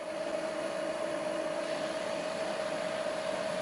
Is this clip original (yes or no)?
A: no